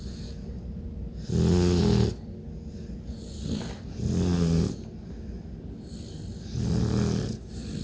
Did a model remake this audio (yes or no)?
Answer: no